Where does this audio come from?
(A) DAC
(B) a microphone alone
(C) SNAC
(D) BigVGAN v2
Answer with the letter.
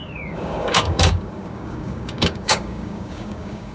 A